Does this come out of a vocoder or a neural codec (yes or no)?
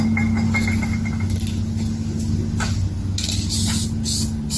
no